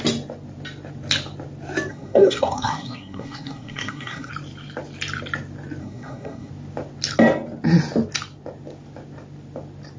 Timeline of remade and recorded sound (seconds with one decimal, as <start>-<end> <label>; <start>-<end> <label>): 0.0-1.9 recorded; 1.9-4.3 remade; 4.3-5.8 recorded; 5.8-6.5 remade; 6.5-10.0 recorded